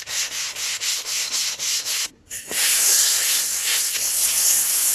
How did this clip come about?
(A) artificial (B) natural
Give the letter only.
A